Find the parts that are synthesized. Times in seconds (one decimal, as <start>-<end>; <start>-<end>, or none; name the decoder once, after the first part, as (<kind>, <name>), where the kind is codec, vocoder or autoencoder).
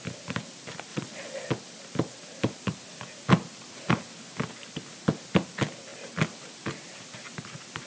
0.9-1.5 (vocoder, Vocos)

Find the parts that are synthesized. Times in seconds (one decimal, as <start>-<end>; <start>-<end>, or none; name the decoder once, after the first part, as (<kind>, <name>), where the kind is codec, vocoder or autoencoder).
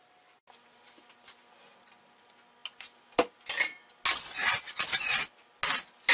none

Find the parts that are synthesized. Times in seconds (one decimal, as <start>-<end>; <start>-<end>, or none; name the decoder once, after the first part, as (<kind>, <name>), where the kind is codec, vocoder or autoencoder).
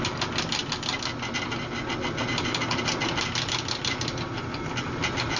none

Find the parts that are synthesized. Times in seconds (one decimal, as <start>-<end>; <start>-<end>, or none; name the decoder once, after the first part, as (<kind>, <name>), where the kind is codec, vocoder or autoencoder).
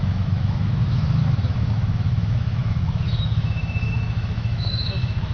0.0-5.3 (autoencoder, DAC-VAE)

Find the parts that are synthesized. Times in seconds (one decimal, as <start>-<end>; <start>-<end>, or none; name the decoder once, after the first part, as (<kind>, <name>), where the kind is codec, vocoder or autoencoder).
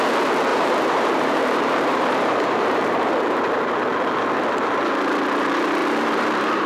0.5-3.4 (vocoder, BigVGAN v2); 5.8-6.7